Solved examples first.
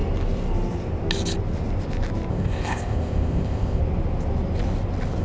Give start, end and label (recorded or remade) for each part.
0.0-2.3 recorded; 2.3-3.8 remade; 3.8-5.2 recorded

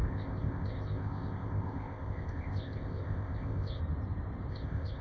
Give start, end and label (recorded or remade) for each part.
0.0-3.8 remade; 3.8-4.5 recorded; 4.5-5.0 remade

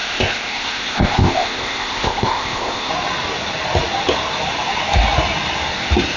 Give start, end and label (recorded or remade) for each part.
0.0-2.9 remade; 2.9-6.2 recorded

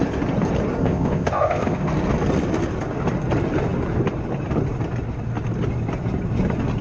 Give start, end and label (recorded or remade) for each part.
0.0-0.8 recorded; 0.8-1.9 remade; 1.9-6.8 recorded